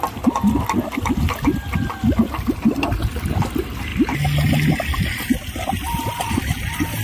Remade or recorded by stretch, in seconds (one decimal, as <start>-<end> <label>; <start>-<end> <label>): 0.0-7.0 recorded

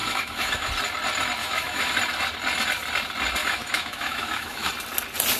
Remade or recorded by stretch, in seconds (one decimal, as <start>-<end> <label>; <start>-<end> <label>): 0.0-0.7 remade; 0.7-1.4 recorded; 1.4-1.9 remade; 1.9-3.4 recorded; 3.4-4.7 remade; 4.7-5.4 recorded